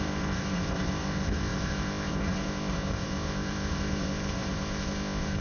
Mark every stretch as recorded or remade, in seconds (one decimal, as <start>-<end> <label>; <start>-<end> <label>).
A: 0.0-5.4 remade